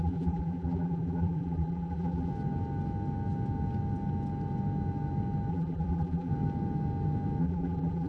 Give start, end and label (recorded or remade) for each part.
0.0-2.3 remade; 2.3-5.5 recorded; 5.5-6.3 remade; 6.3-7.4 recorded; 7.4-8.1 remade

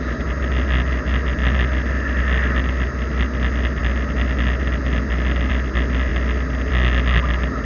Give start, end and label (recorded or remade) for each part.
0.0-7.6 recorded

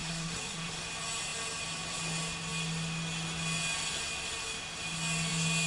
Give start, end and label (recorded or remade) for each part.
0.0-0.7 remade; 0.7-5.7 recorded